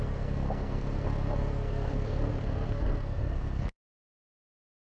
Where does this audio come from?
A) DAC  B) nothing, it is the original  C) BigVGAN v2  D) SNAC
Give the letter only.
D